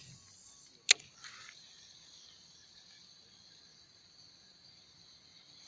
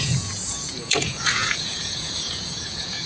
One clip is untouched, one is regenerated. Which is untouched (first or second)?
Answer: first